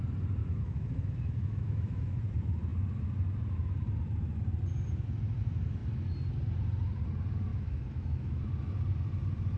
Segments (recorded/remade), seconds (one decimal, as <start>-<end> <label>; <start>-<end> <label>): 0.0-0.4 recorded; 0.4-2.2 remade; 2.2-7.5 recorded; 7.5-8.4 remade; 8.4-9.6 recorded